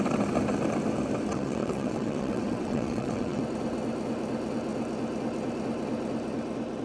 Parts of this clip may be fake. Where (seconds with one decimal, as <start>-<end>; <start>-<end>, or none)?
1.3-3.4